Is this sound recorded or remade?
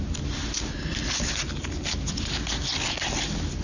recorded